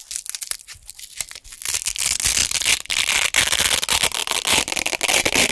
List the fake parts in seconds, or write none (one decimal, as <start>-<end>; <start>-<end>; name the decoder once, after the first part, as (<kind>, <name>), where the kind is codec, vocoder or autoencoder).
none